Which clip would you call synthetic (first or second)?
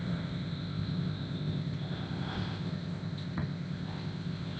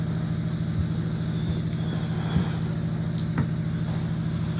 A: first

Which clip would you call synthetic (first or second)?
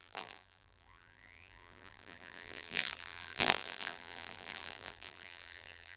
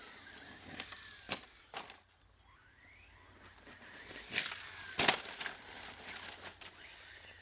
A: first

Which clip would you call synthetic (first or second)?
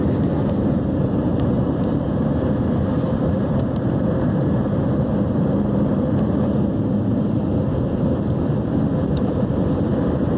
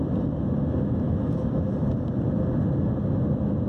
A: first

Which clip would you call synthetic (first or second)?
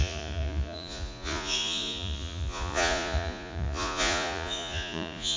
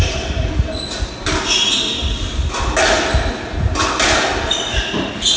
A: first